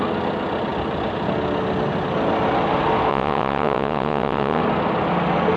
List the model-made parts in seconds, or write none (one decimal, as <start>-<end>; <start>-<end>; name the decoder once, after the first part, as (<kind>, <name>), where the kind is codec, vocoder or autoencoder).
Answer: 3.1-4.6 (vocoder, WaveNeXt)